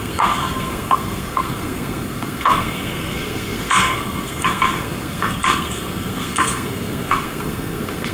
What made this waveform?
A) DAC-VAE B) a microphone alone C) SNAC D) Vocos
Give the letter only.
C